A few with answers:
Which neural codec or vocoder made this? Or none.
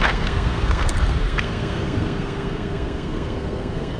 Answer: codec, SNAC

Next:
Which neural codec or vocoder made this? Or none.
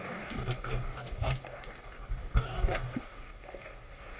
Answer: codec, DAC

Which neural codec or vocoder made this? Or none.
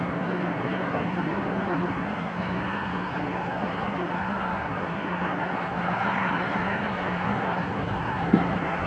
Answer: codec, SNAC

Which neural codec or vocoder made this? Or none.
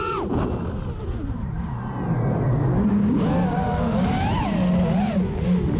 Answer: none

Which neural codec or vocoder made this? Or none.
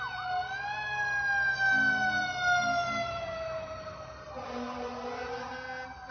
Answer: none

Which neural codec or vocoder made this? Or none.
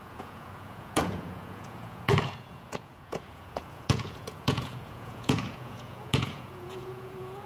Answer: vocoder, Vocos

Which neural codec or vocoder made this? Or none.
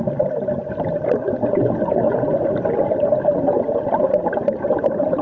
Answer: none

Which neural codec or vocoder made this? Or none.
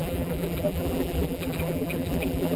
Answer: vocoder, BigVGAN v2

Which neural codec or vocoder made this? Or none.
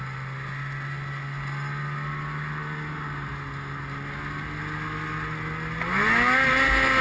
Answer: none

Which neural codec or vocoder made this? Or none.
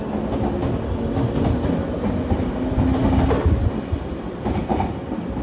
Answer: none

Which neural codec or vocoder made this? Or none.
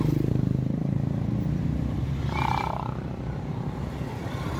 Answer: none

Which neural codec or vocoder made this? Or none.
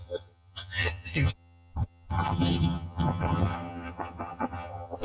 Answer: vocoder, HiFi-GAN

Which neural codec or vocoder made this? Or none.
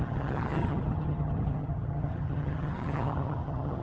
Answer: vocoder, HiFi-GAN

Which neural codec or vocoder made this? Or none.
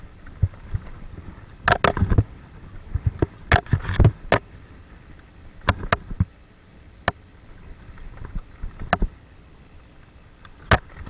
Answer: none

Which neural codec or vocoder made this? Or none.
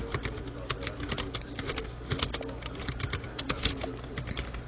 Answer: none